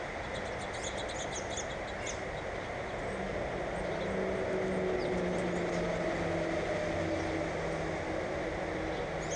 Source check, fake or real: real